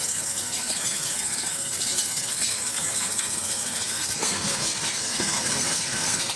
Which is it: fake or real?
fake